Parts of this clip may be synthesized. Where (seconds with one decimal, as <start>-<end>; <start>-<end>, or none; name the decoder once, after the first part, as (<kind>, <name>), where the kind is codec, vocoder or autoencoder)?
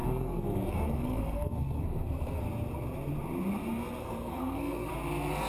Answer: 0.0-2.4 (codec, SNAC); 4.0-4.9